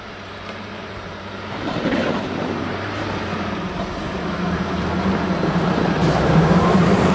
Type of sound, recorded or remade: remade